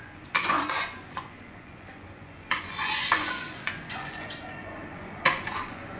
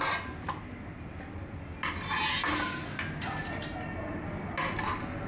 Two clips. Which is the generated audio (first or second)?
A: first